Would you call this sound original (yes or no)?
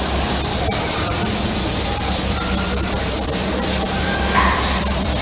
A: no